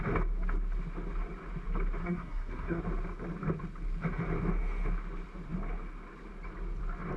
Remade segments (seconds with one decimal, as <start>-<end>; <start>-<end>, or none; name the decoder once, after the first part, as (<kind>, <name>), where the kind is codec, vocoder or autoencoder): 2.0-2.8 (codec, SNAC)